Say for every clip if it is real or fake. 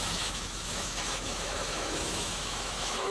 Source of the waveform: fake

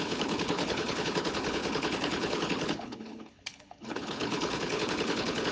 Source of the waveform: fake